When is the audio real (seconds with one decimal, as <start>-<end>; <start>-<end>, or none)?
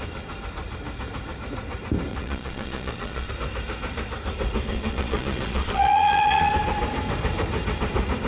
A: 0.0-2.1; 3.3-4.7; 6.5-8.3